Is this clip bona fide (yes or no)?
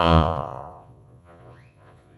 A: no